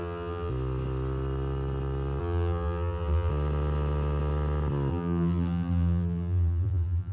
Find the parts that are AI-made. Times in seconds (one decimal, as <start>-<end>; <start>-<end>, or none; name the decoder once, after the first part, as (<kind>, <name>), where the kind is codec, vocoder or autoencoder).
0.0-0.5 (vocoder, BigVGAN v2); 2.2-3.3; 4.9-7.1